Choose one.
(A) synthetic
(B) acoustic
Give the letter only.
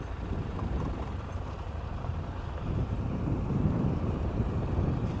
A